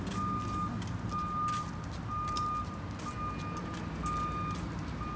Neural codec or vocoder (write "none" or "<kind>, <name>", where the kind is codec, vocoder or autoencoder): none